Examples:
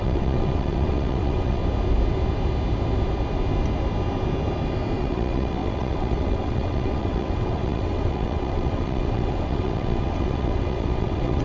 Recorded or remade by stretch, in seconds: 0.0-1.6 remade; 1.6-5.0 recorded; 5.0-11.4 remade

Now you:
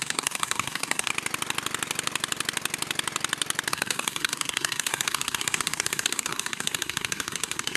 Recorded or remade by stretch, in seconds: 0.0-1.1 remade; 1.1-3.7 recorded; 3.7-7.8 remade

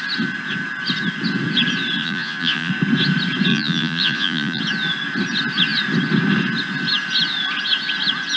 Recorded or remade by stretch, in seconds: 0.0-2.0 recorded; 2.0-2.7 remade; 2.7-3.5 recorded; 3.5-4.6 remade; 4.6-8.4 recorded

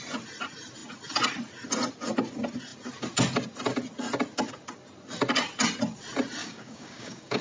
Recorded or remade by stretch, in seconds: 0.0-6.4 recorded; 6.4-7.4 remade